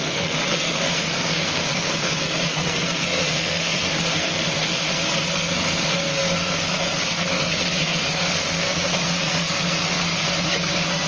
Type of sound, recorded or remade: remade